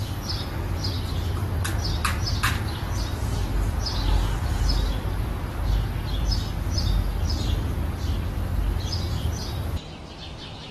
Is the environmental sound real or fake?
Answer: real